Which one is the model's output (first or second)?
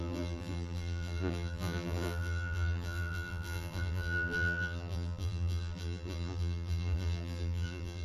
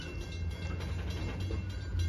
first